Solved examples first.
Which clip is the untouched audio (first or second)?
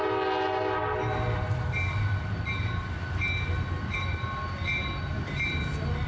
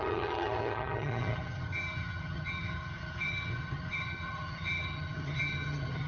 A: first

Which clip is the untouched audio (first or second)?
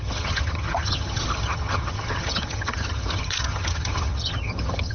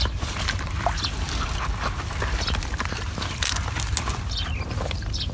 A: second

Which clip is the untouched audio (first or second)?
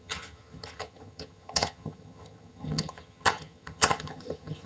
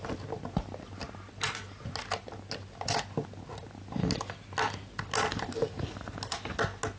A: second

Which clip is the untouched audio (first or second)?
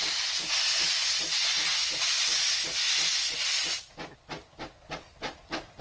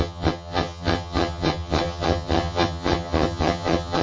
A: first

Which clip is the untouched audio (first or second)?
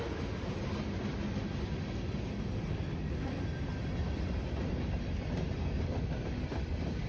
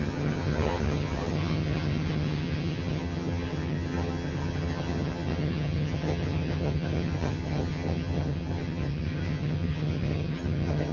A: first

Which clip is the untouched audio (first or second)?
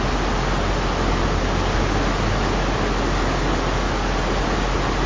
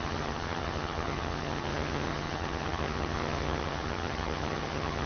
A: first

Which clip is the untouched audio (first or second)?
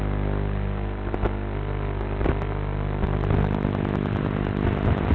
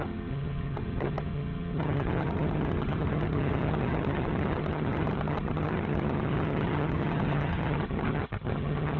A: first